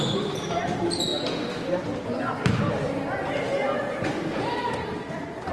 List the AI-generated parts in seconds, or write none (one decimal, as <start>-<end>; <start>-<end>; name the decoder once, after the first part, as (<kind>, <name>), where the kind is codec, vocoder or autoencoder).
0.0-1.1 (vocoder, BigVGAN v2); 4.4-5.5